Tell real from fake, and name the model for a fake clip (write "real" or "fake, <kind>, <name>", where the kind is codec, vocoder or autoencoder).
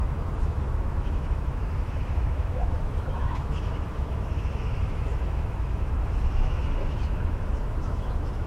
fake, autoencoder, DAC-VAE